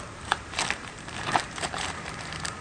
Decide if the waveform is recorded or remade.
remade